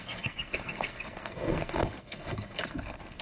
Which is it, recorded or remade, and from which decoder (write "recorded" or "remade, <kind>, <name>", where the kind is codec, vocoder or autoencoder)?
remade, codec, SNAC